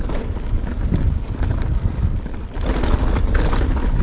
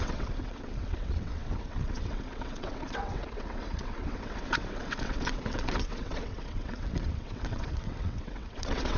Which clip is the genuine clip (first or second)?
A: first